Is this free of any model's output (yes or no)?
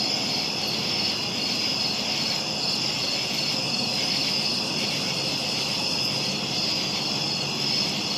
yes